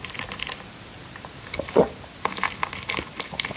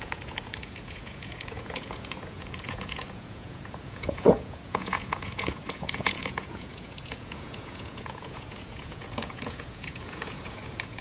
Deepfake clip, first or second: second